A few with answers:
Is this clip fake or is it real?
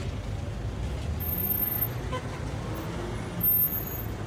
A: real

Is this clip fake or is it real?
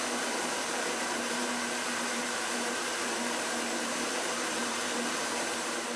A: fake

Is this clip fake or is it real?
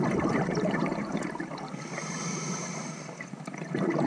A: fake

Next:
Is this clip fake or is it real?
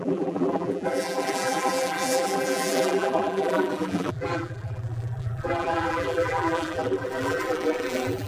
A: fake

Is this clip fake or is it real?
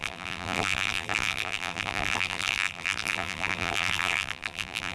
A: fake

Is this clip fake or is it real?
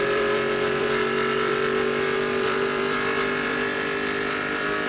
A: fake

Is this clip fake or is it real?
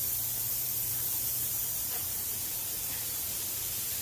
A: fake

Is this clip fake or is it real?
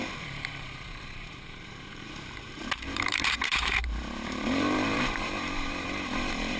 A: fake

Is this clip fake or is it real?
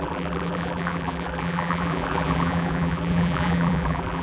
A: fake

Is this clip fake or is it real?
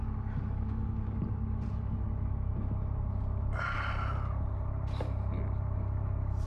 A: real